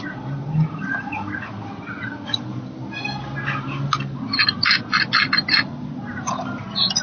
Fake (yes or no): no